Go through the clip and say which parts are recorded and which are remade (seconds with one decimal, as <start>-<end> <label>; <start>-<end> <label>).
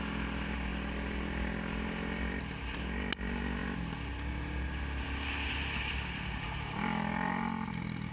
0.0-8.1 recorded